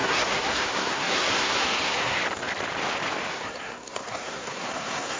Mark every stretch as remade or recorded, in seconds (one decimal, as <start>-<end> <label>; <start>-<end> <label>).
0.0-2.2 remade; 2.2-3.3 recorded; 3.3-5.2 remade